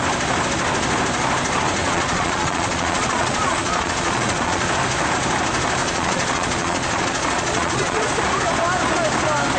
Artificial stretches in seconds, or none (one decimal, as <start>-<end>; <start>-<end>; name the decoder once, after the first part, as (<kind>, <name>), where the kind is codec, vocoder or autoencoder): 1.8-4.7 (vocoder, Vocos); 5.8-8.1